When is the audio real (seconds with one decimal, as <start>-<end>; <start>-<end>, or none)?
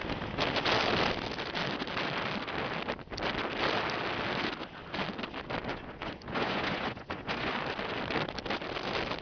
0.0-5.7; 7.5-9.2